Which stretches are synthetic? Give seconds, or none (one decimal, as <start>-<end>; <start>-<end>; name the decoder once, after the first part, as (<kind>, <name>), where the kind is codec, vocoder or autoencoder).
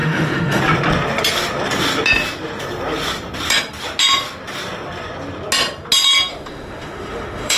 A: 0.0-0.6 (autoencoder, DAC-VAE); 6.3-7.6